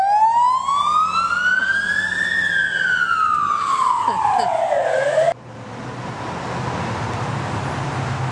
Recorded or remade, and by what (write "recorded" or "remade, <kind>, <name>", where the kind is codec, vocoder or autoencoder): recorded